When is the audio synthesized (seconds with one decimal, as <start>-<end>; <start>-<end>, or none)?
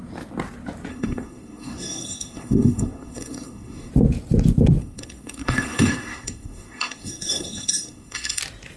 0.9-3.9; 4.8-8.4